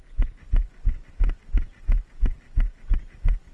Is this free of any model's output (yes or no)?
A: yes